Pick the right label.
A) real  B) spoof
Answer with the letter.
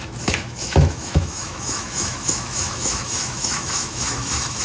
B